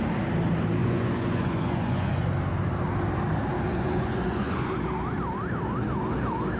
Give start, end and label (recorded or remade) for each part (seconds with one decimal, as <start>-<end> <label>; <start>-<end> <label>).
0.0-0.8 recorded; 0.8-2.3 remade; 2.3-3.7 recorded; 3.7-4.7 remade; 4.7-6.6 recorded